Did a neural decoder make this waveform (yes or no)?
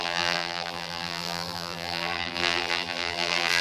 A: yes